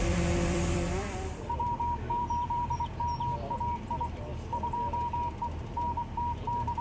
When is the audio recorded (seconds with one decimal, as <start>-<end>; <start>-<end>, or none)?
2.8-6.8